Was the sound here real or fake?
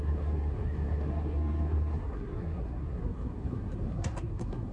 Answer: fake